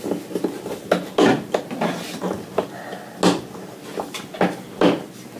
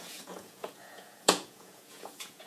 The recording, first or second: first